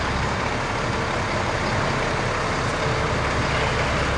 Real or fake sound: real